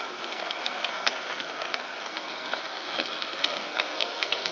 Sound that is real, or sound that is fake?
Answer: fake